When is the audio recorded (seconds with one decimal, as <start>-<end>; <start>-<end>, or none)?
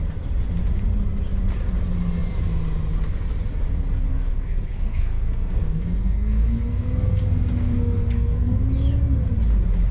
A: 0.0-4.1; 8.6-9.9